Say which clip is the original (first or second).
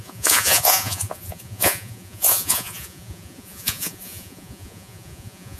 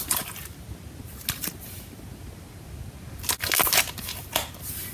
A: second